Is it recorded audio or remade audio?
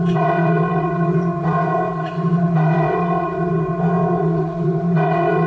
remade